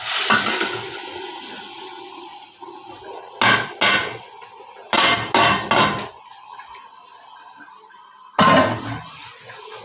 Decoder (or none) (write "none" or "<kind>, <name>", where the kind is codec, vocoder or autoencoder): none